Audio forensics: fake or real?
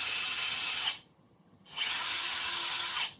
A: fake